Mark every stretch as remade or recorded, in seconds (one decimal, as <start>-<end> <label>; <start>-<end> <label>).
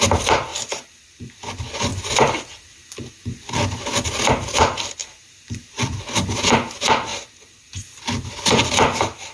0.0-0.5 recorded; 0.5-1.3 remade; 1.3-1.9 recorded; 1.9-3.1 remade; 3.1-5.0 recorded; 5.0-5.8 remade; 5.8-7.1 recorded; 7.1-8.3 remade; 8.3-9.3 recorded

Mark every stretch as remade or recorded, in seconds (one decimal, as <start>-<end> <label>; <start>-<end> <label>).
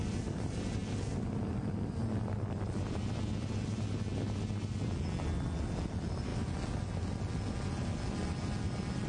0.0-9.1 recorded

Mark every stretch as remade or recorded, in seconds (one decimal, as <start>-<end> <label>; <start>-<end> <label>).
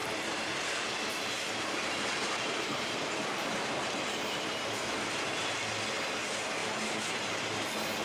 0.0-4.8 remade; 4.8-6.6 recorded; 6.6-7.3 remade; 7.3-8.0 recorded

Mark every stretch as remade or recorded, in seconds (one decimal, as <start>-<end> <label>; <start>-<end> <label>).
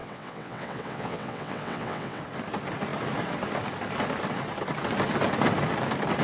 0.0-2.2 remade; 2.2-6.2 recorded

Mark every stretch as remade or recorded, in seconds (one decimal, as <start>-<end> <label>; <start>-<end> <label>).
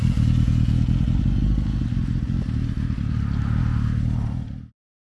0.0-5.1 recorded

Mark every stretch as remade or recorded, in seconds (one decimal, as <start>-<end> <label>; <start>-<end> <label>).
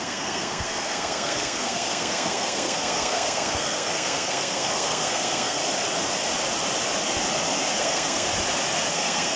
0.0-5.6 remade; 5.6-7.8 recorded; 7.8-8.3 remade; 8.3-8.9 recorded; 8.9-9.4 remade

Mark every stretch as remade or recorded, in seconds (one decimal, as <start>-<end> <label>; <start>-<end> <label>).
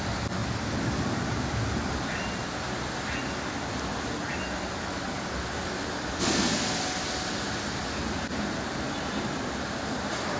0.0-10.4 recorded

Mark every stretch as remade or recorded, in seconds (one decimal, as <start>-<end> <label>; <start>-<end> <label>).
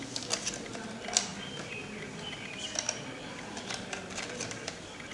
0.0-5.1 recorded